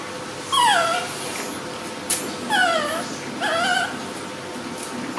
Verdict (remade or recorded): recorded